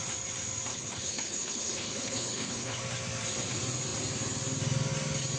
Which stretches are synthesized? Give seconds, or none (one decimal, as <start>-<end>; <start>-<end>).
0.7-2.8